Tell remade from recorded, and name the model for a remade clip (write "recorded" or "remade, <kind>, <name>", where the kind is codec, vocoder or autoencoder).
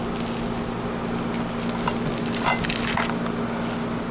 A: recorded